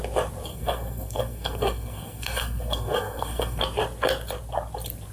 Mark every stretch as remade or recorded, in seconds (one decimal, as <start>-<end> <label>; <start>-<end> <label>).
0.0-0.5 recorded; 0.5-3.6 remade; 3.6-5.1 recorded